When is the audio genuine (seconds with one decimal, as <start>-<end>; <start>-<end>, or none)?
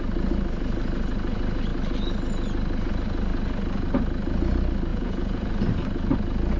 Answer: 0.0-4.9; 5.5-6.6